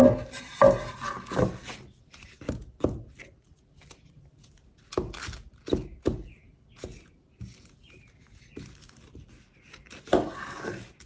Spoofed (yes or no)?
no